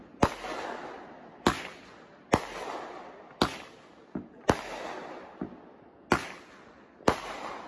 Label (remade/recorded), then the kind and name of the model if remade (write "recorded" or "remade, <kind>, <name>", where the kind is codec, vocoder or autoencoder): recorded